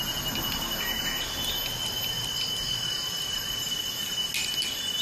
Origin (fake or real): real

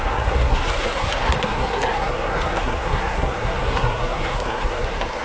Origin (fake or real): fake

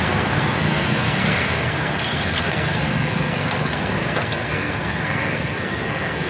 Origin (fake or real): fake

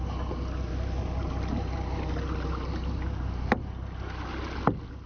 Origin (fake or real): real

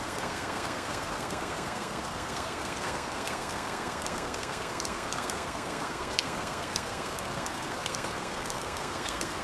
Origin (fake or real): fake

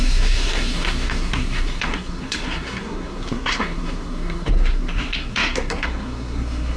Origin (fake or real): fake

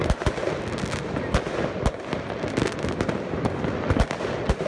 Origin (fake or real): real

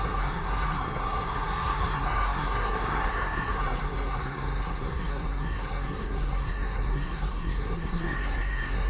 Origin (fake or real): fake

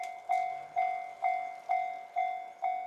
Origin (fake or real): real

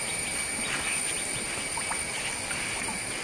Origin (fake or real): real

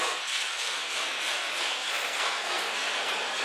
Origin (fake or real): fake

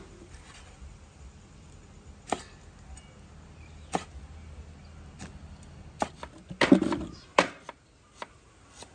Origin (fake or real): real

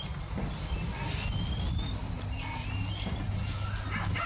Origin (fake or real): real